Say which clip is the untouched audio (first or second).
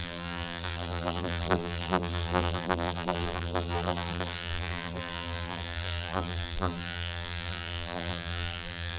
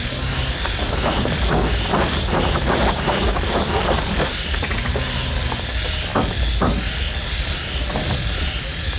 second